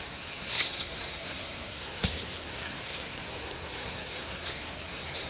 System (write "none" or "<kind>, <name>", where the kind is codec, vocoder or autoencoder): codec, SNAC